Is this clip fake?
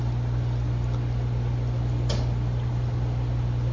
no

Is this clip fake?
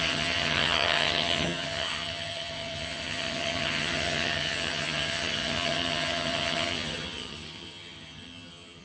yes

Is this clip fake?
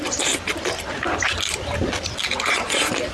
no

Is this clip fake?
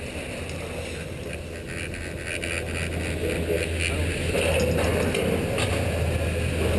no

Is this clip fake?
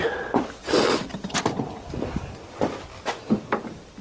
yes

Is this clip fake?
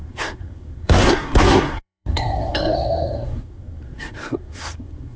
yes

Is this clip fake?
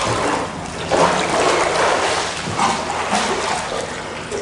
no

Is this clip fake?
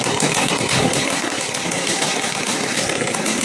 yes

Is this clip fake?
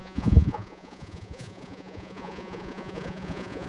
yes